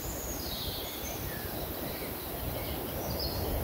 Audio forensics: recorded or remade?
recorded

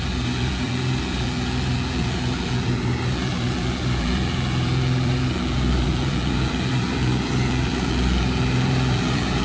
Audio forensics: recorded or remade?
remade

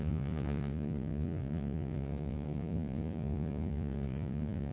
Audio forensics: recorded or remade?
remade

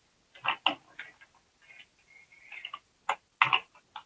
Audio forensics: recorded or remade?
recorded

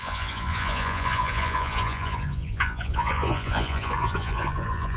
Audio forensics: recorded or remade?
remade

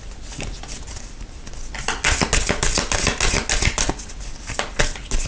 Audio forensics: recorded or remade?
recorded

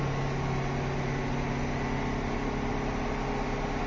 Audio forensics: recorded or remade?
recorded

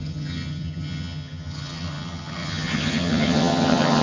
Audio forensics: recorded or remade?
remade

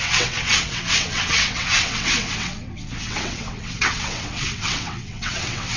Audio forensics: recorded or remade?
remade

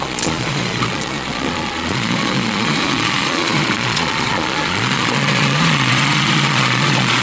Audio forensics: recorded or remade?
remade